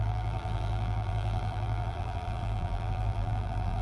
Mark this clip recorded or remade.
remade